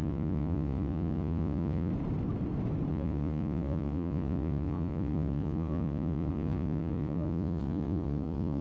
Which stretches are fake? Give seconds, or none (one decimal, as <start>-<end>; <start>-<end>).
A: 0.0-1.9; 2.9-8.6